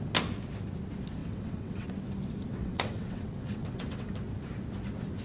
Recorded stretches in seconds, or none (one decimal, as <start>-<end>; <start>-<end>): 0.0-1.2; 1.9-2.5; 4.1-5.2